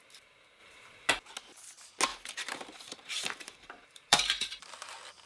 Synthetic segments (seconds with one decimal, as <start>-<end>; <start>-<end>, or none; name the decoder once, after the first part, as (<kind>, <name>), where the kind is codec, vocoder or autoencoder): 0.6-1.1 (vocoder, BigVGAN v2); 2.1-4.7